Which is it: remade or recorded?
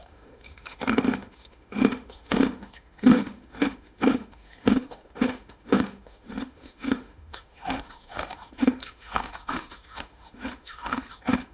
remade